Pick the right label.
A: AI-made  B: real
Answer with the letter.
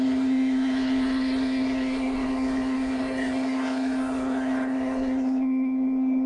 A